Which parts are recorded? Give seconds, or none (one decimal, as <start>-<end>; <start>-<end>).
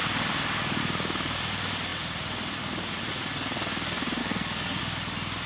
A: 0.0-4.2; 4.8-5.5